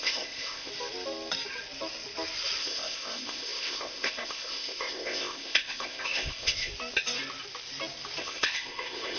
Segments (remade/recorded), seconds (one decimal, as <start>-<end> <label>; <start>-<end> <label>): 0.0-0.7 remade; 0.7-2.6 recorded; 2.6-6.7 remade; 6.7-8.2 recorded; 8.2-9.2 remade